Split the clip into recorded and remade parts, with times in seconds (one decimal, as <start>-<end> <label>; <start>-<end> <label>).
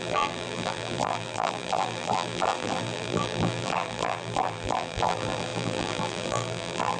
0.0-7.0 remade